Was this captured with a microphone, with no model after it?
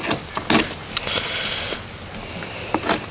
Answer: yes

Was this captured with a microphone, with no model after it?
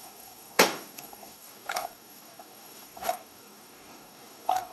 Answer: no